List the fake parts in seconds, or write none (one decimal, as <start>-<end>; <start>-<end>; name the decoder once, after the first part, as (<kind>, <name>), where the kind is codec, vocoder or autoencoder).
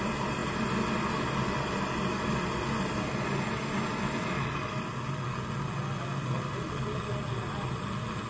none